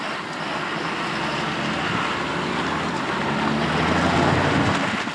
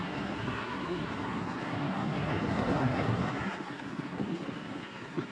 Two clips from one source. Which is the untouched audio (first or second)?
first